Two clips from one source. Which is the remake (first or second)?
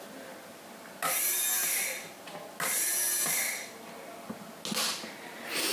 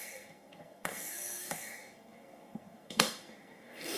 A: second